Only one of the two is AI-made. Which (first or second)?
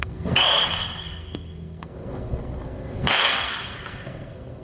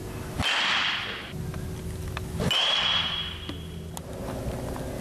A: first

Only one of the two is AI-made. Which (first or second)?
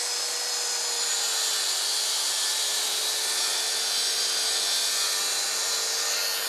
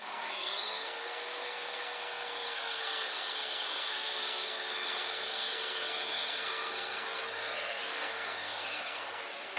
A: second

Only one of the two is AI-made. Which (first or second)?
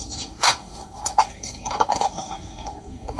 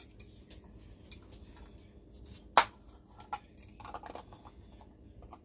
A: first